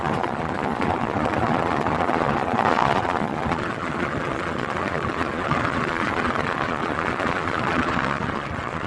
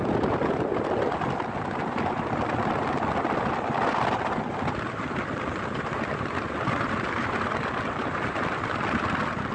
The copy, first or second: first